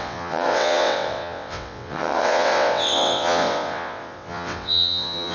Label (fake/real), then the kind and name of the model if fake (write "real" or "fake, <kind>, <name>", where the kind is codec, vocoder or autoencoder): fake, vocoder, WaveNeXt